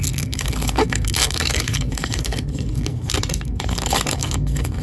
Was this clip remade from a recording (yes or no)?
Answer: yes